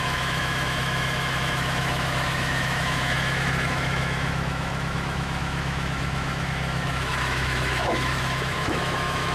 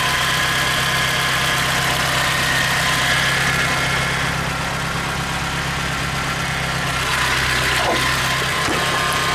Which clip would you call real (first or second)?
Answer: second